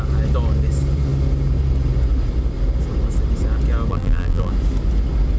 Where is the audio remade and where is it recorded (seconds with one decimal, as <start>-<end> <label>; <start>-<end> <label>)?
0.0-3.9 recorded; 3.9-4.5 remade; 4.5-5.4 recorded